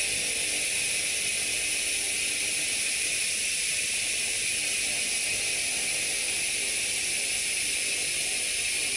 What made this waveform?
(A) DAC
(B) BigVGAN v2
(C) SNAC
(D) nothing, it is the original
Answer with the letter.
D